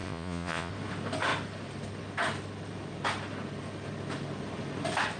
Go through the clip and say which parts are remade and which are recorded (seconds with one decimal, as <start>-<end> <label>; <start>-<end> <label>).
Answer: 0.0-0.7 remade; 0.7-5.2 recorded